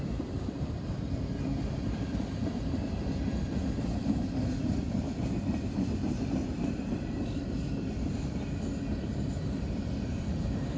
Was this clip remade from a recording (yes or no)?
yes